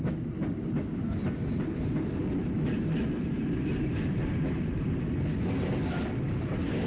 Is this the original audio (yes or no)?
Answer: yes